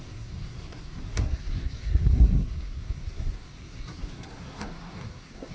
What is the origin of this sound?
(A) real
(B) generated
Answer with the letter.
B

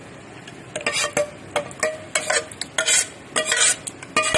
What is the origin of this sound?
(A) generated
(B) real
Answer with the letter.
B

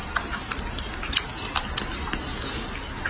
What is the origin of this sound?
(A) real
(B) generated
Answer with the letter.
A